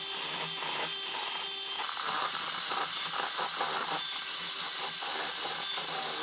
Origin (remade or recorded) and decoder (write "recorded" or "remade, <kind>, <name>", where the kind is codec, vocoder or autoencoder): recorded